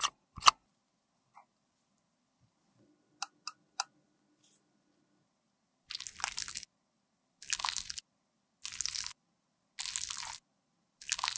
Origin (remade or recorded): recorded